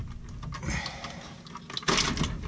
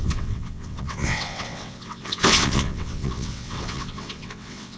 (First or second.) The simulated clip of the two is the second